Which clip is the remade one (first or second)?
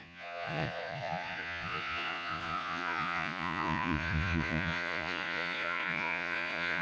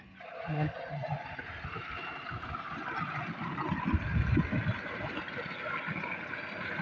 first